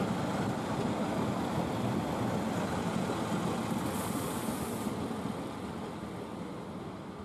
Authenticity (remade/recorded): recorded